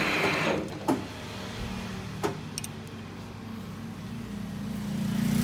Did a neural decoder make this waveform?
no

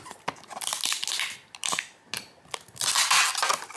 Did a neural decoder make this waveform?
no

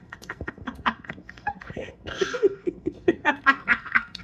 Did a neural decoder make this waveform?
yes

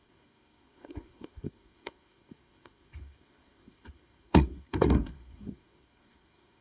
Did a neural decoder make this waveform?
yes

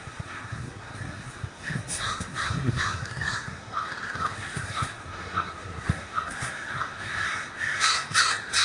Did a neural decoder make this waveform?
yes